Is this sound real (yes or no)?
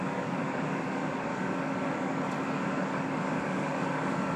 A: no